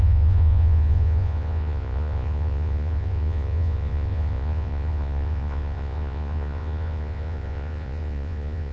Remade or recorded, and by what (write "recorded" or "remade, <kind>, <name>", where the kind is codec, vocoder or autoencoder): remade, vocoder, Vocos